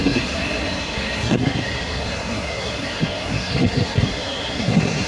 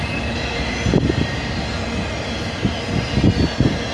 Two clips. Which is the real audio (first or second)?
second